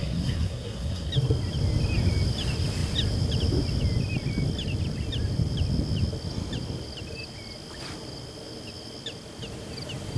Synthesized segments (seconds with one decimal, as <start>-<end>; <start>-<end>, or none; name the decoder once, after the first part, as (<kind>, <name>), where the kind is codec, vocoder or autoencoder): 0.0-1.1 (codec, SNAC)